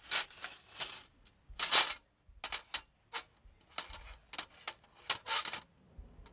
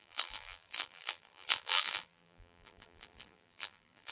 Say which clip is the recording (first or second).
first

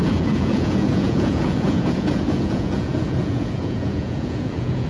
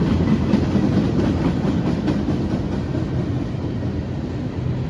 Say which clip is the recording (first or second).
second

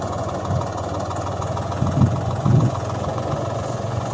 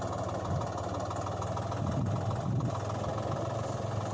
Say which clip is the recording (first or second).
second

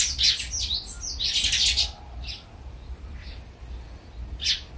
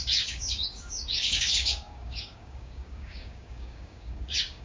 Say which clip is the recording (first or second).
first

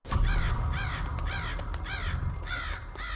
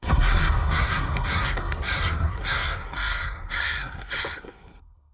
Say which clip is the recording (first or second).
first